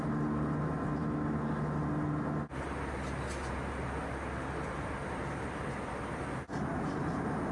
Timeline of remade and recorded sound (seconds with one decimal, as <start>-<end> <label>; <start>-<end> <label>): 0.0-7.5 recorded